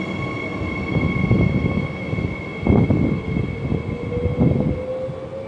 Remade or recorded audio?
recorded